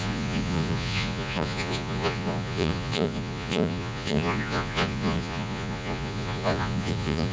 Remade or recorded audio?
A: remade